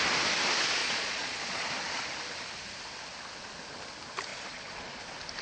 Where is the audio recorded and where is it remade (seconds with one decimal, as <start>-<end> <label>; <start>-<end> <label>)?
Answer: 0.0-0.8 recorded; 0.8-1.7 remade; 1.7-4.3 recorded; 4.3-5.0 remade; 5.0-5.4 recorded